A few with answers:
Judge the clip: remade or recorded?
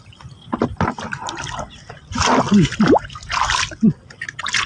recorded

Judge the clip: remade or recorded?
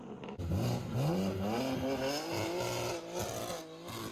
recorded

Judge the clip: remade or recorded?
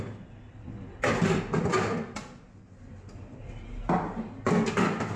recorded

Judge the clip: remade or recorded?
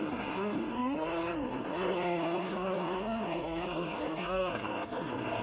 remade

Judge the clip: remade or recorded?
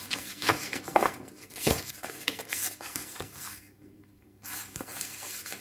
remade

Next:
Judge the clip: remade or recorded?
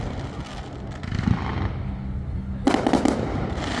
recorded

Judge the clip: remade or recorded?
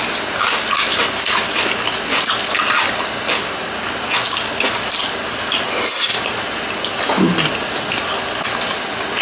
recorded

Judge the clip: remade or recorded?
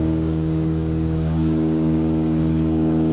remade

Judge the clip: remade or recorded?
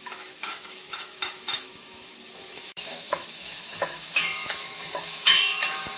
remade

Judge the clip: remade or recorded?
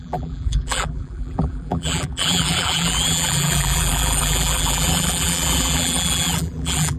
remade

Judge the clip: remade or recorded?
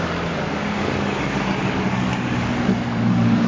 remade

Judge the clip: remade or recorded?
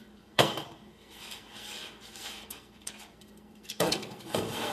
remade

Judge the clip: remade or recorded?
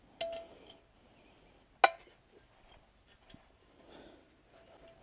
recorded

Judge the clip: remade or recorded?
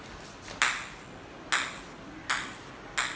recorded